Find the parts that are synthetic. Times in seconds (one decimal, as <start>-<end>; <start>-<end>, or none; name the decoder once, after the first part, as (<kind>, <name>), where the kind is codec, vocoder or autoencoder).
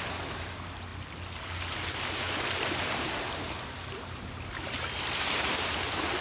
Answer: none